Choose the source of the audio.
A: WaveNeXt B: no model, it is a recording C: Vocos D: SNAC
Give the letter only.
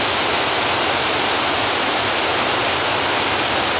B